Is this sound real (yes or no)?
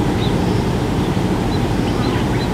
yes